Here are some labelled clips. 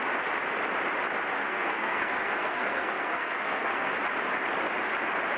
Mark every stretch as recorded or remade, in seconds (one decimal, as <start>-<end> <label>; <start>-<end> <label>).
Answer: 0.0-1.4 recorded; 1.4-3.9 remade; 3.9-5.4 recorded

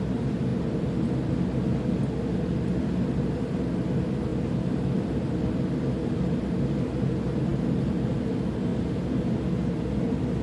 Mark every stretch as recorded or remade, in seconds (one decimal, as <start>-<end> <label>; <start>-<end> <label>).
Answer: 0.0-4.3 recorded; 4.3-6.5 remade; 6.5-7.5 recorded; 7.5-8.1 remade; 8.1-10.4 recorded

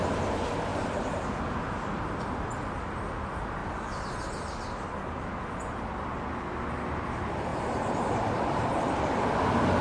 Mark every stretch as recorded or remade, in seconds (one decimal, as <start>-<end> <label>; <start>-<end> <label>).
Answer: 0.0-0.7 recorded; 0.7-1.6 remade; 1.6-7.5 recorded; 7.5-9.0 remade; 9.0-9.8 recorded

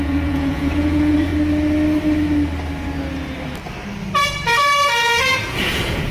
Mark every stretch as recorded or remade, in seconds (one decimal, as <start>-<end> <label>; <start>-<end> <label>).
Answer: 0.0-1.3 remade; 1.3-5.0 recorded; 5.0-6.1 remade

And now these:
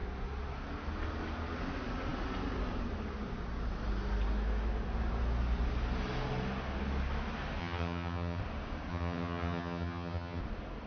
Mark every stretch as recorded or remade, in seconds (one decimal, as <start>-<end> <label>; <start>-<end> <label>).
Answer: 0.0-7.6 recorded; 7.6-8.4 remade; 8.4-8.9 recorded; 8.9-10.4 remade; 10.4-10.9 recorded